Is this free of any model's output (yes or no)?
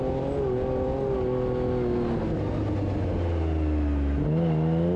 yes